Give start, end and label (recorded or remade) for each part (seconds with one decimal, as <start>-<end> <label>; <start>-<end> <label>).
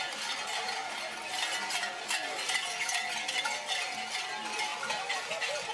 0.0-4.7 recorded; 4.7-5.3 remade; 5.3-5.7 recorded